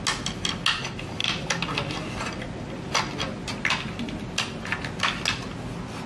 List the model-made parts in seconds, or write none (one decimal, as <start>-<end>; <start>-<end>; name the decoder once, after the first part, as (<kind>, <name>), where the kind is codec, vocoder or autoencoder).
none